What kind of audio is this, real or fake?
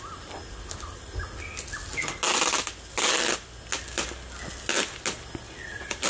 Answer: real